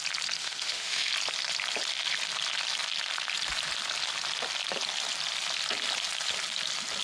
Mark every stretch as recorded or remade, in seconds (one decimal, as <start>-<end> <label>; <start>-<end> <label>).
0.0-0.4 recorded; 0.4-1.1 remade; 1.1-7.0 recorded